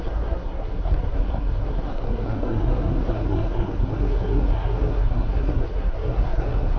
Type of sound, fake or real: fake